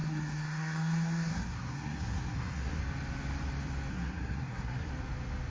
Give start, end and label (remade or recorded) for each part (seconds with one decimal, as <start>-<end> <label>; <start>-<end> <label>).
0.0-2.8 remade; 2.8-3.9 recorded; 3.9-4.9 remade; 4.9-5.5 recorded